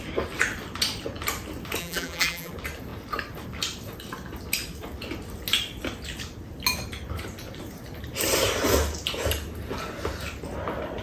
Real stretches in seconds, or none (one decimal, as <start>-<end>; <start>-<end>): 0.0-1.8; 2.5-11.0